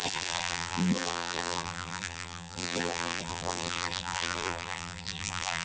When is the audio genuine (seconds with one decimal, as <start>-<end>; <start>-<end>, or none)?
none